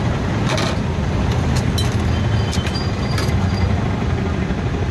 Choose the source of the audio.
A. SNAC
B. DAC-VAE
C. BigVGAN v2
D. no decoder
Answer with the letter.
D